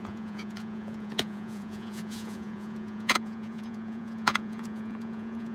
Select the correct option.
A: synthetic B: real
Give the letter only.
A